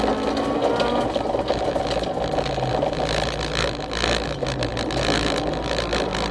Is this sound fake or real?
real